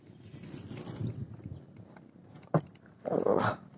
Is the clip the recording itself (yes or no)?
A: yes